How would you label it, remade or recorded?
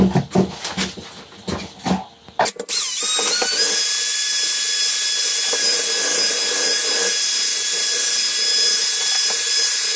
recorded